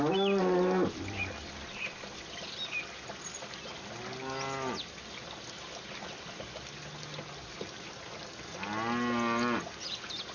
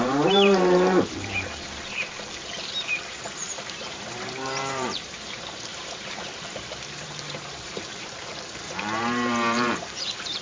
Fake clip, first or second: second